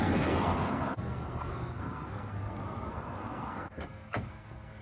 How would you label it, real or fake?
fake